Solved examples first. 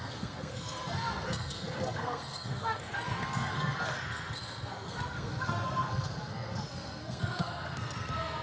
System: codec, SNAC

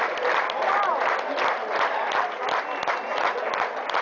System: none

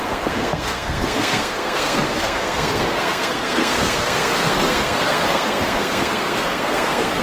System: codec, SNAC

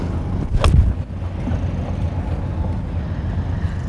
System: none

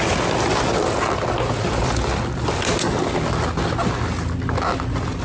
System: none